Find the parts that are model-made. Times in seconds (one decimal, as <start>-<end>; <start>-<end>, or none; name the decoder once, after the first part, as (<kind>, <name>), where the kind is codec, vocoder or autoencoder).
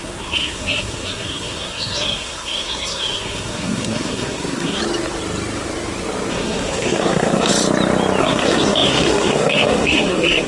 0.0-4.8 (codec, SNAC); 6.3-7.5; 8.2-10.5